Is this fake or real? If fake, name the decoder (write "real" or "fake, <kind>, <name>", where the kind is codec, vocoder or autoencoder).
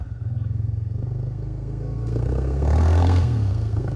fake, codec, SNAC